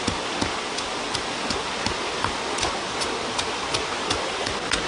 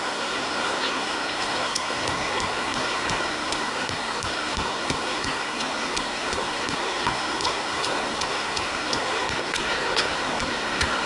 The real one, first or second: first